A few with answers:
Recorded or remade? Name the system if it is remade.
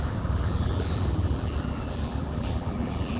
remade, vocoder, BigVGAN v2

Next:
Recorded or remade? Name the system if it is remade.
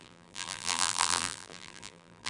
remade, vocoder, BigVGAN v2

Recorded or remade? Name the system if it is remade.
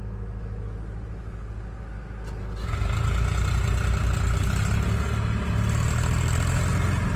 recorded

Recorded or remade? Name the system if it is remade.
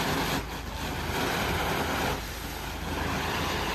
recorded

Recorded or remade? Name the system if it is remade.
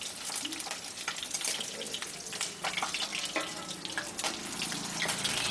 recorded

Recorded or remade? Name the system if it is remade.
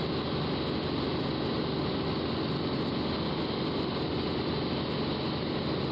recorded